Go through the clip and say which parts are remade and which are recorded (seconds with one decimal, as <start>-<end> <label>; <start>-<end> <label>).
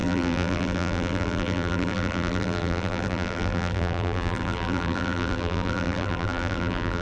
0.0-7.0 remade